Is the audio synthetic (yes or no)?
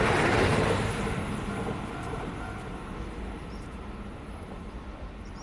no